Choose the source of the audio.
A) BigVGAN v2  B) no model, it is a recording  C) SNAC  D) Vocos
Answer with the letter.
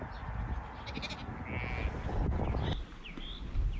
B